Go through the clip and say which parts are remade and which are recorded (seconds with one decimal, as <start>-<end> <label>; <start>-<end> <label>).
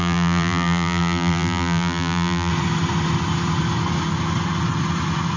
0.0-2.5 remade; 2.5-5.4 recorded